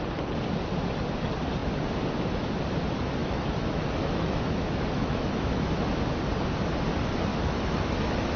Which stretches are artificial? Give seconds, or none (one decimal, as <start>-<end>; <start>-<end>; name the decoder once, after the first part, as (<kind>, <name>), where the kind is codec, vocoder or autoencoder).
3.2-5.7 (autoencoder, DAC-VAE); 7.3-8.4